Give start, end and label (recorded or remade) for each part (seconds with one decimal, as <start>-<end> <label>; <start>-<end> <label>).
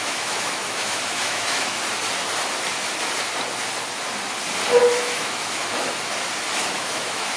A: 0.0-1.8 remade; 1.8-5.0 recorded; 5.0-5.6 remade; 5.6-6.8 recorded; 6.8-7.4 remade